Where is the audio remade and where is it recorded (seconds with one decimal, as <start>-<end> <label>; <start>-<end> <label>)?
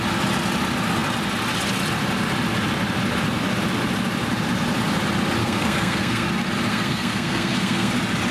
0.0-5.4 recorded; 5.4-6.3 remade; 6.3-6.7 recorded; 6.7-7.9 remade; 7.9-8.3 recorded